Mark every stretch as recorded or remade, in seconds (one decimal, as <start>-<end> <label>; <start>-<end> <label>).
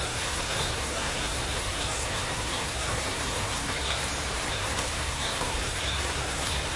0.0-4.0 remade; 4.0-4.5 recorded; 4.5-6.8 remade